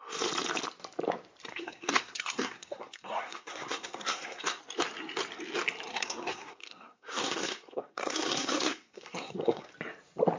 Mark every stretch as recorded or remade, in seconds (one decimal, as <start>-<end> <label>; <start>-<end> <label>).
0.0-1.5 recorded; 1.5-4.6 remade; 4.6-5.9 recorded; 5.9-9.7 remade; 9.7-10.4 recorded